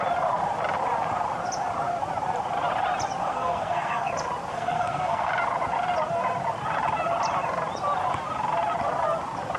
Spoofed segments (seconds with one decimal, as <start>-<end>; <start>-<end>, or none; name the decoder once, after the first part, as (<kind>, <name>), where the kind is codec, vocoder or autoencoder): 3.2-4.1 (codec, SNAC); 4.5-5.3

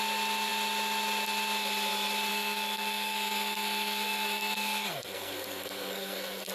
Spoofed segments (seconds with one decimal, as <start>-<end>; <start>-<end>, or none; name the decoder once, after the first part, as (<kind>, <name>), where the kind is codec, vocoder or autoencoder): 2.3-6.5 (codec, SNAC)

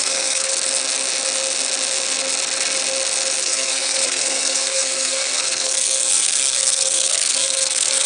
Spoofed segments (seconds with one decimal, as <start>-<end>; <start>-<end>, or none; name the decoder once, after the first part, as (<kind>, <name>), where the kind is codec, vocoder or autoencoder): 0.0-0.5 (codec, SNAC); 3.4-8.1